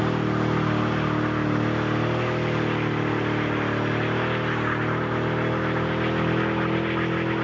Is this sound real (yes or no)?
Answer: yes